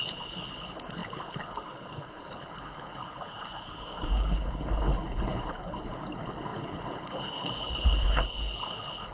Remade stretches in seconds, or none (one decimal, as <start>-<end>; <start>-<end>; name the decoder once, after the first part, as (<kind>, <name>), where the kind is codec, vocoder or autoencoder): 0.0-9.1 (codec, HILCodec)

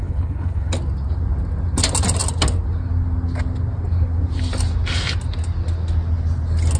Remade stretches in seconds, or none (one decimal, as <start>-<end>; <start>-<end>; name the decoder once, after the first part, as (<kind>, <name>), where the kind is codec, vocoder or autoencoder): 0.0-0.7 (codec, HILCodec)